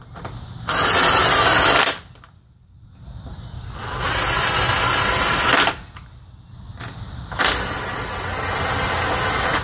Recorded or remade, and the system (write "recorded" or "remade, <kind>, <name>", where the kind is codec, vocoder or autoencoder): recorded